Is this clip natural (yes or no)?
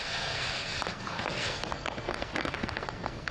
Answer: no